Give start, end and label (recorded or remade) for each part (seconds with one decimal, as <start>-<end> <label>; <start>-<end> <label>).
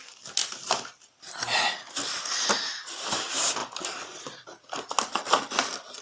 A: 0.0-6.0 recorded